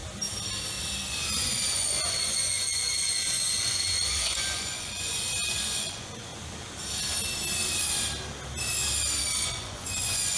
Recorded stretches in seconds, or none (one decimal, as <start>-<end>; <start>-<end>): 0.0-1.1; 6.3-9.3